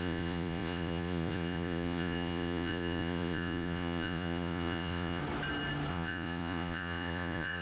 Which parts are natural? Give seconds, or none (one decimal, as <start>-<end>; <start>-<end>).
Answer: 5.2-5.9